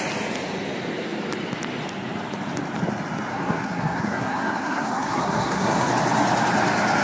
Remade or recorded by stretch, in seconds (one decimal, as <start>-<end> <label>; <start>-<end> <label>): 0.0-3.3 recorded; 3.3-5.9 remade; 5.9-7.0 recorded